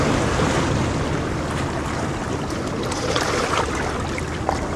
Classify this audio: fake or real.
real